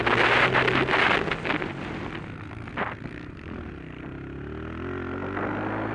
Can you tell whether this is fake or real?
real